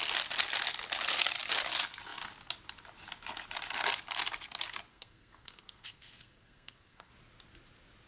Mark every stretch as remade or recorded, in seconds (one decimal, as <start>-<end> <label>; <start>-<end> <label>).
0.0-4.9 recorded; 4.9-7.1 remade; 7.1-8.1 recorded